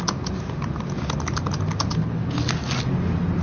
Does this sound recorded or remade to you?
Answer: recorded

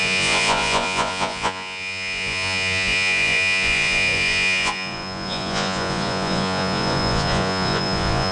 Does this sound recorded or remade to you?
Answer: remade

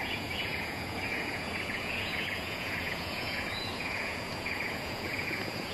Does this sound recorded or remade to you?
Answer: remade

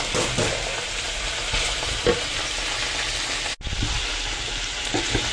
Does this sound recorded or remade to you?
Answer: recorded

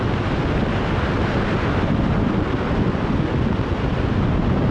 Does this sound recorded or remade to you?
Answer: recorded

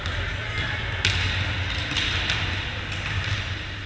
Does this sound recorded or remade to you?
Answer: recorded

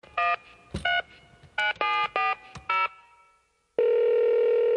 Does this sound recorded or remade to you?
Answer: recorded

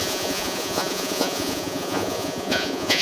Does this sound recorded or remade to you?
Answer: remade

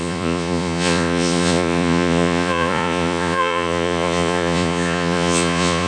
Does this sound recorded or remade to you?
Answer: remade